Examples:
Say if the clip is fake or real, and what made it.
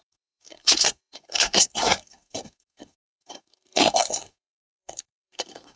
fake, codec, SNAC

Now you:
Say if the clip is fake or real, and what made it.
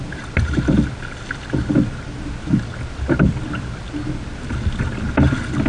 real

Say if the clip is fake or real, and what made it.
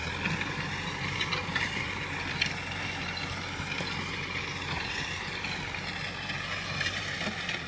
real